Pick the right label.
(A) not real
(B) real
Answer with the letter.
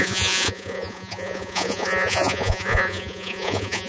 A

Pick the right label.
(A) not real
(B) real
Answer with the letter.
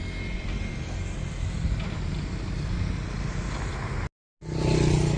B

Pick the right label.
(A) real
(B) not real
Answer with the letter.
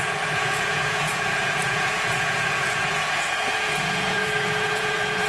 B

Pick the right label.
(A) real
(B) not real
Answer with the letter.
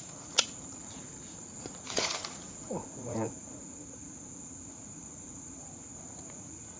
B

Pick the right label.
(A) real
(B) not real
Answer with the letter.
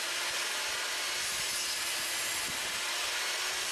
A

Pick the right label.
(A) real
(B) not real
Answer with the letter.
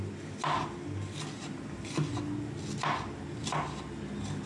A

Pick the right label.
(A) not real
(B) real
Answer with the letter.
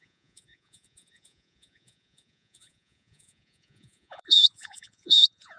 A